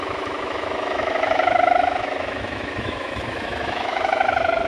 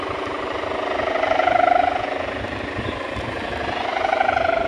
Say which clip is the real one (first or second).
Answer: second